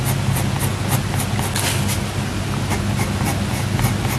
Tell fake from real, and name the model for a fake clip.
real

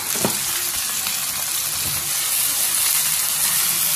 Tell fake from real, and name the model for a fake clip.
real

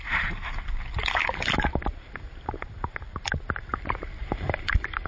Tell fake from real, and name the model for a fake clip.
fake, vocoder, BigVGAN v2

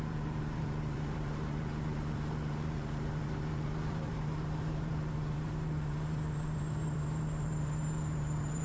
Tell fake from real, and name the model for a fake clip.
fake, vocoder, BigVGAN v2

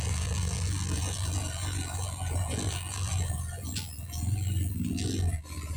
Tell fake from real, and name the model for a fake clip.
fake, vocoder, BigVGAN v2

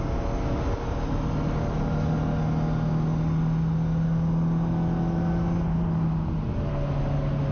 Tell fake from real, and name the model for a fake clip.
real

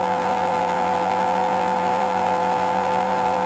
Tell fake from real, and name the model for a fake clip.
fake, vocoder, BigVGAN v2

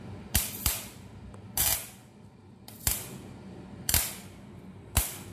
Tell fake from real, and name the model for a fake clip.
fake, vocoder, BigVGAN v2